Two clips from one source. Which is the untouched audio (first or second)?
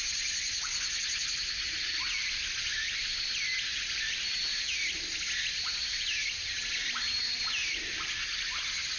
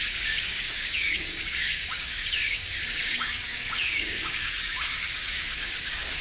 first